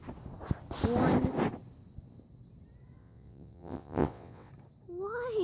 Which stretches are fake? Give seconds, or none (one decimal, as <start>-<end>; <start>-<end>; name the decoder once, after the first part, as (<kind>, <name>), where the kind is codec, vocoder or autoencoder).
3.0-4.5 (vocoder, WaveNeXt)